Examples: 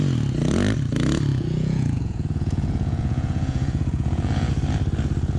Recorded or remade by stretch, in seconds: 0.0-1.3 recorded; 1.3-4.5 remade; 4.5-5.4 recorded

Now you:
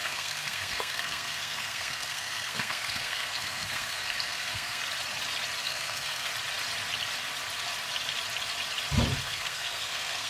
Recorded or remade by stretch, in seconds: 0.0-4.8 remade; 4.8-5.6 recorded; 5.6-6.3 remade; 6.3-9.2 recorded; 9.2-10.3 remade

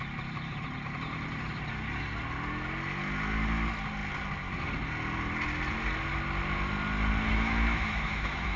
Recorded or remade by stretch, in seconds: 0.0-7.3 recorded; 7.3-8.6 remade

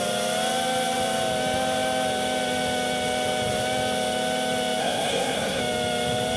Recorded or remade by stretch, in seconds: 0.0-4.8 recorded; 4.8-5.6 remade; 5.6-6.4 recorded

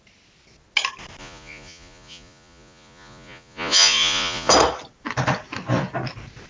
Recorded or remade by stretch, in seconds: 0.0-1.2 recorded; 1.2-4.5 remade; 4.5-6.5 recorded

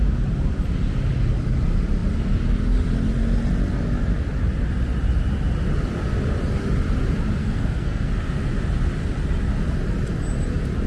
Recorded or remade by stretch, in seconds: 0.0-7.4 recorded; 7.4-8.1 remade; 8.1-10.9 recorded

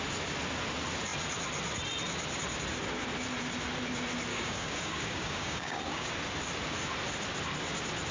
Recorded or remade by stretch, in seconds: 0.0-4.3 recorded; 4.3-6.1 remade; 6.1-8.1 recorded